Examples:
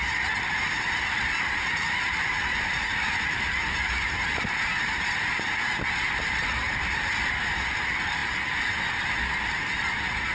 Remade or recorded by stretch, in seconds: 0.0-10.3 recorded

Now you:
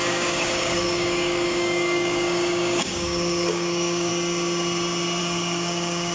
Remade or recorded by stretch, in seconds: 0.0-4.1 remade; 4.1-5.2 recorded; 5.2-6.1 remade

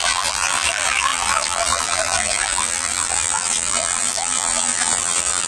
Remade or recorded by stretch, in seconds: 0.0-5.5 remade

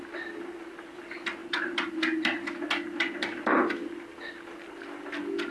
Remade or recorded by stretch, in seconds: 0.0-5.5 recorded

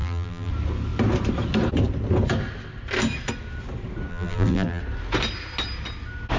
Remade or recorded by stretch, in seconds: 0.0-0.5 remade; 0.5-4.1 recorded; 4.1-4.8 remade; 4.8-6.4 recorded

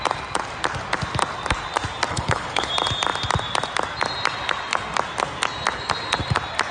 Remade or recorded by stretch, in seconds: 0.0-2.1 recorded; 2.1-2.7 remade; 2.7-6.7 recorded